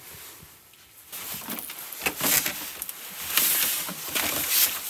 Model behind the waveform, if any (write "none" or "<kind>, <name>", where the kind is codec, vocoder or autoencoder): none